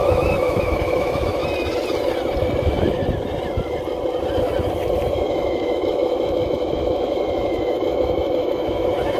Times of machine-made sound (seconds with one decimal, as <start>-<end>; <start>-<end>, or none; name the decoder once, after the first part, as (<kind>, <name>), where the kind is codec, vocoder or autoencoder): 0.0-1.4 (autoencoder, DAC-VAE); 2.6-3.0; 5.1-9.2